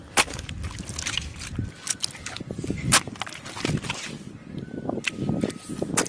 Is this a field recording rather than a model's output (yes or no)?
yes